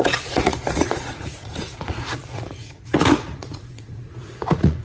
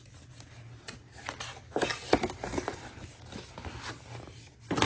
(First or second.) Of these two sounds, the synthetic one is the first